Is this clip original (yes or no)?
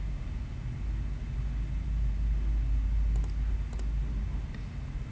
yes